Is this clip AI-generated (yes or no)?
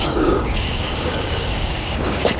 yes